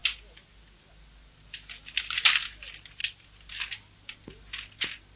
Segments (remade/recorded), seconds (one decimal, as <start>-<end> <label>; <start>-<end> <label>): 0.0-5.2 recorded